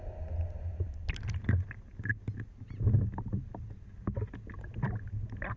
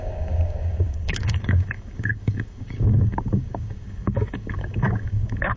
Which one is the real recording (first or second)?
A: first